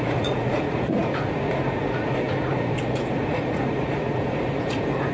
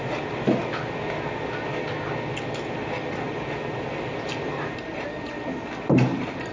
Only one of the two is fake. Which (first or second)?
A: first